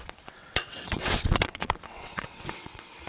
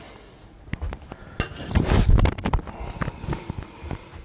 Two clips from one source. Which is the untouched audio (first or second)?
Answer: second